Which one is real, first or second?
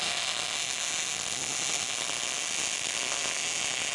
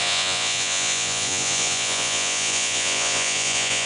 first